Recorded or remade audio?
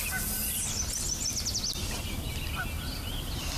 recorded